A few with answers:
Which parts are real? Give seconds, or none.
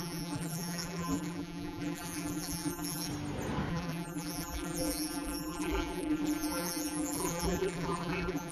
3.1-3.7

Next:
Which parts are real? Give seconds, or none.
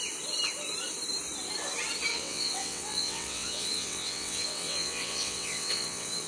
0.0-2.1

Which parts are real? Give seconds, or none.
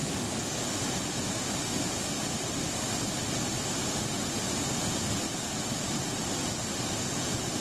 0.0-0.7; 6.4-7.6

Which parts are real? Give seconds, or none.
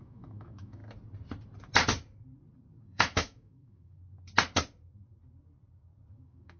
0.8-2.8; 4.0-6.1